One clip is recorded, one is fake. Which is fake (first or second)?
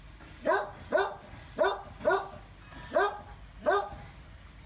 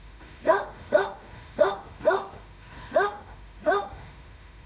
second